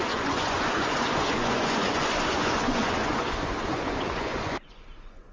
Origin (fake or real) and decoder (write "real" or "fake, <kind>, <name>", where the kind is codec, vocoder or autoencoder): fake, vocoder, Vocos